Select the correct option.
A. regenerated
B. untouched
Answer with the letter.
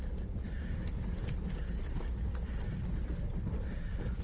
B